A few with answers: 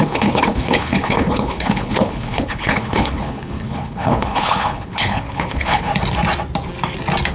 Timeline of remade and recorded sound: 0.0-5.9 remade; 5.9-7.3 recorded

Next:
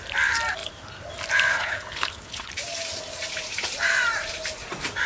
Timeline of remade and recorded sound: 0.0-1.5 recorded; 1.5-2.5 remade; 2.5-5.1 recorded

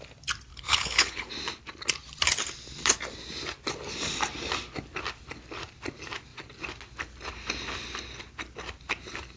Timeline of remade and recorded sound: 0.0-0.5 recorded; 0.5-1.3 remade; 1.3-9.4 recorded

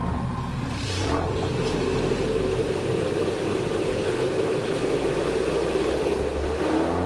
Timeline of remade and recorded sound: 0.0-3.9 recorded; 3.9-4.8 remade; 4.8-5.8 recorded; 5.8-6.6 remade; 6.6-7.1 recorded

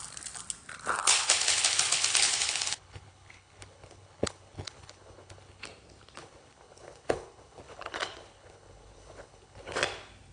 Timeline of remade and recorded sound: 0.0-1.0 recorded; 1.0-5.6 remade; 5.6-6.2 recorded; 6.2-9.8 remade; 9.8-10.3 recorded

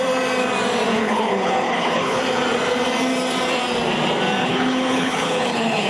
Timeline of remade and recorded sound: 0.0-0.9 recorded; 0.9-2.2 remade; 2.2-4.4 recorded; 4.4-5.9 remade